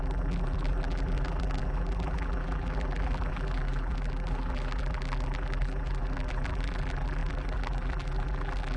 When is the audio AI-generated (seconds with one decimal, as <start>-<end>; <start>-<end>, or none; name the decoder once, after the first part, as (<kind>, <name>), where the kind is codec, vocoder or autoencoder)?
0.0-8.8 (vocoder, BigVGAN v2)